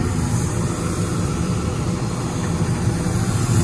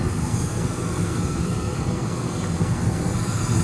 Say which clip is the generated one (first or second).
second